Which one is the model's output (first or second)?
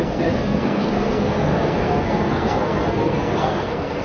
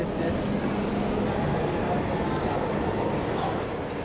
first